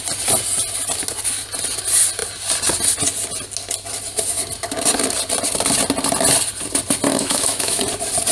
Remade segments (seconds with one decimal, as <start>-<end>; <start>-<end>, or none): 7.1-7.8